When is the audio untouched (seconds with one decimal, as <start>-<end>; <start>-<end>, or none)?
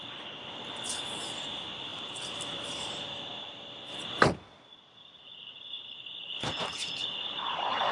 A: none